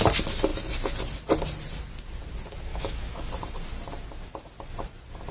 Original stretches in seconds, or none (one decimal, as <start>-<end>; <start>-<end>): 0.0-2.7; 3.3-5.3

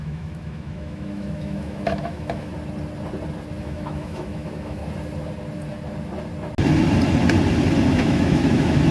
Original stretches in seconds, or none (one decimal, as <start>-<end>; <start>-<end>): 2.5-3.6; 4.8-7.9

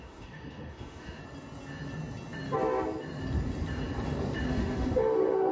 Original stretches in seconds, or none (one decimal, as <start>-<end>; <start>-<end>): 1.2-4.5